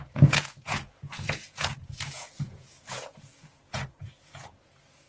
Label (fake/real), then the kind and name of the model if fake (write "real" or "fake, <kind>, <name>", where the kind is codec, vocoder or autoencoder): fake, vocoder, Vocos